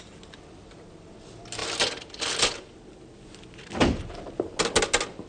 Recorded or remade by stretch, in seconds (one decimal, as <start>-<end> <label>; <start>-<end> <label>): 0.0-5.3 recorded